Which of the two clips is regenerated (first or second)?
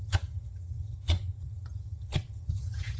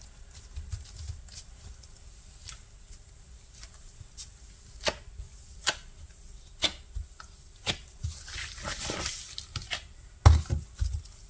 first